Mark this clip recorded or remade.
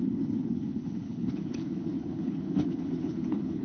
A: remade